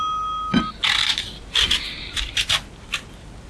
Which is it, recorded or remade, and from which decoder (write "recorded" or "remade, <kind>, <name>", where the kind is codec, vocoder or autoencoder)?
recorded